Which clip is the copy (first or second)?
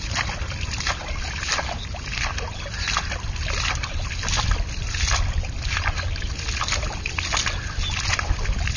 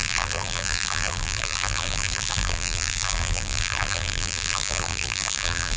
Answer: second